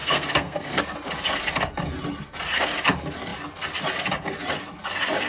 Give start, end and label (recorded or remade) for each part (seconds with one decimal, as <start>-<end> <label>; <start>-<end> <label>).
0.0-0.8 remade; 0.8-5.3 recorded